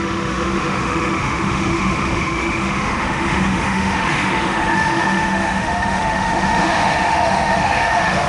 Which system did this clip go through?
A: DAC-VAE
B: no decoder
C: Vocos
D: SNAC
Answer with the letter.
A